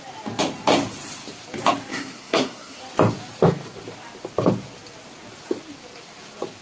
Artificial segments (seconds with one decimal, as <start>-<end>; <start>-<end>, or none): 1.9-2.8